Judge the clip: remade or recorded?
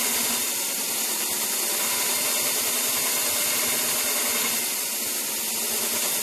recorded